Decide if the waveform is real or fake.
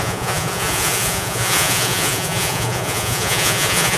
fake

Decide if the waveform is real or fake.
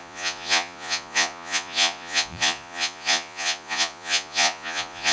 fake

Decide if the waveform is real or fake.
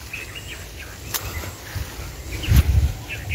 real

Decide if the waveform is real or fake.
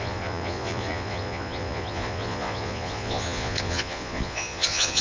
fake